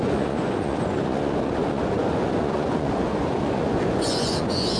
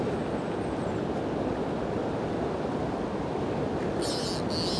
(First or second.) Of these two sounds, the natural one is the second